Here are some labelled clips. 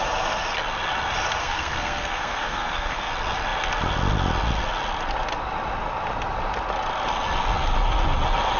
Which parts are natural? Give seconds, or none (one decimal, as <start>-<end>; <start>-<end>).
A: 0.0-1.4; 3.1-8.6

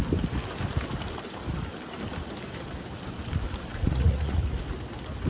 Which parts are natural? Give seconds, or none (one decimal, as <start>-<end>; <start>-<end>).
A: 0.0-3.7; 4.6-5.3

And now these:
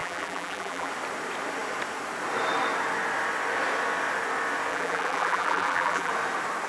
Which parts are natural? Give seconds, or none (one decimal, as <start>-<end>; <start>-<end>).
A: 0.9-4.7; 6.1-6.7